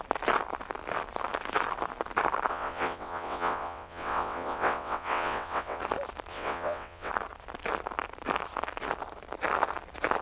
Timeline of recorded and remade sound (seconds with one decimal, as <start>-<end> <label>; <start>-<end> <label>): 0.0-2.5 recorded; 2.5-5.8 remade; 5.8-6.3 recorded; 6.3-7.1 remade; 7.1-10.2 recorded